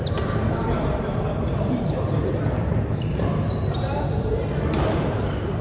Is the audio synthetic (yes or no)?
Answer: yes